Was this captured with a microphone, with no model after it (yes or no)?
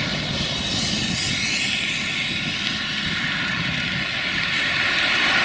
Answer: yes